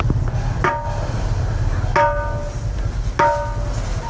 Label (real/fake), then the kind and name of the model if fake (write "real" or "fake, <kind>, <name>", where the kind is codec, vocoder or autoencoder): real